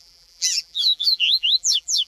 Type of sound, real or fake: fake